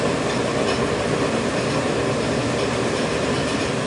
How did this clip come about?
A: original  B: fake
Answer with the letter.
A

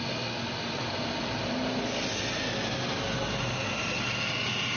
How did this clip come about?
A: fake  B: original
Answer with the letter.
B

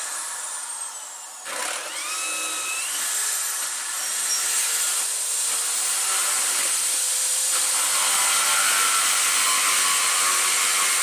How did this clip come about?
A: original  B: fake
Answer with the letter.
A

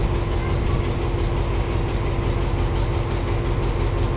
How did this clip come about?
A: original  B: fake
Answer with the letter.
A